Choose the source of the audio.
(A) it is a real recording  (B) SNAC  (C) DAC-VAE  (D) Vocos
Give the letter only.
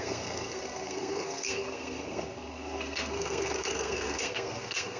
B